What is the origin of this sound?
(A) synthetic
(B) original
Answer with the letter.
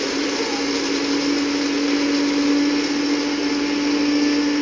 B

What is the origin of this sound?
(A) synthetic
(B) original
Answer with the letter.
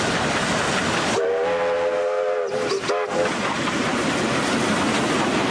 B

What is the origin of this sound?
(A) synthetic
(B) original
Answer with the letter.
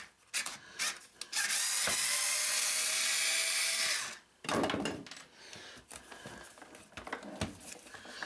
B